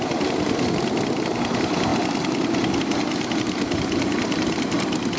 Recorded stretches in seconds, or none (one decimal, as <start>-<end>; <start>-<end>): 0.0-5.2

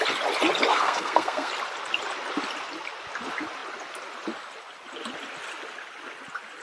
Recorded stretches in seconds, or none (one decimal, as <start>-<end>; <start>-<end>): 0.0-0.7; 1.5-6.6

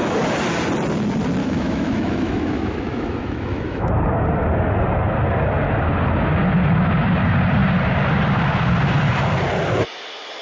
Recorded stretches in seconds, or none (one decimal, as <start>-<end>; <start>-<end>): 0.0-1.4; 3.9-10.4

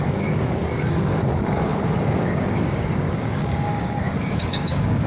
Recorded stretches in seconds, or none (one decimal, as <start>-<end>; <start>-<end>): none

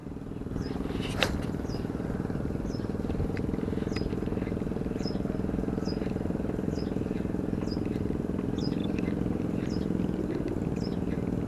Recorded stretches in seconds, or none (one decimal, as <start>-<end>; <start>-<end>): 0.0-8.8; 10.3-11.5

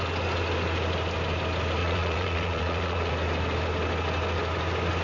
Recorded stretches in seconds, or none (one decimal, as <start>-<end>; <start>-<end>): 0.0-1.8; 3.1-5.0

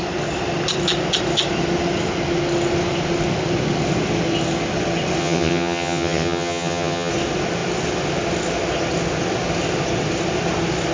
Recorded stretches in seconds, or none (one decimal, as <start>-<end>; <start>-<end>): 0.0-5.2; 7.1-10.9